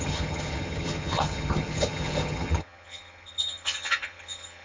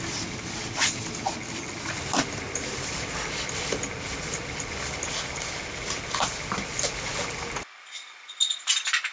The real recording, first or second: second